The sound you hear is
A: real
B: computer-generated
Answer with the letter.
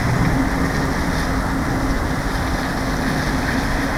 A